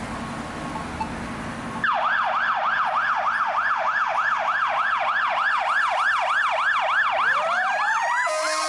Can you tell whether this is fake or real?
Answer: real